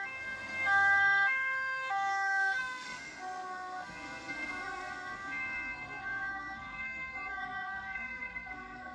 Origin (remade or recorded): remade